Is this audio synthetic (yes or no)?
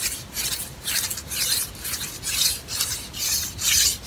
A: no